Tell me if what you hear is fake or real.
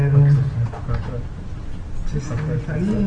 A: real